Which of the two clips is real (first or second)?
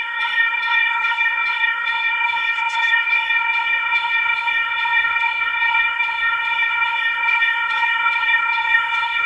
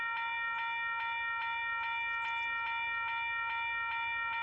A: second